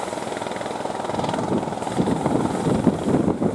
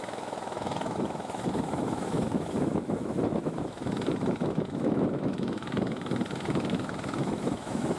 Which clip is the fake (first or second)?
second